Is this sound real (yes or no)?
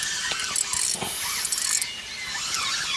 yes